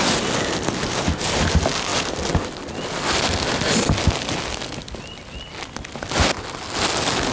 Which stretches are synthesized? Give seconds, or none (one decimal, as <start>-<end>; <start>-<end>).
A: none